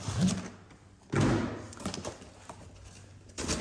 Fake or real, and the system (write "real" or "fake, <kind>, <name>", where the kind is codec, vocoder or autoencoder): real